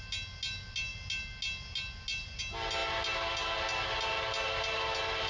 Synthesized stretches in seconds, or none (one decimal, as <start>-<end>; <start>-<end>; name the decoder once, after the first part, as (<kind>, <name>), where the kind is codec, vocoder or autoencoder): none